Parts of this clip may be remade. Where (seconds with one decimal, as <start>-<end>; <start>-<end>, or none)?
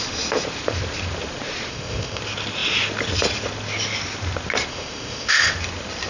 1.7-2.2; 4.7-5.5